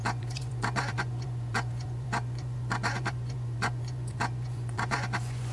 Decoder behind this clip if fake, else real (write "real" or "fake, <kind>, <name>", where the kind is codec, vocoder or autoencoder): fake, vocoder, Vocos